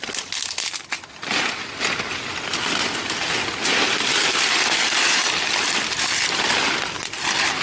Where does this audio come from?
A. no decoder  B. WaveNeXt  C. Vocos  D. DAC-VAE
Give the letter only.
A